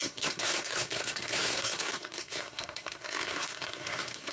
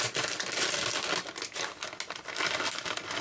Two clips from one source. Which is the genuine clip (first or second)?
second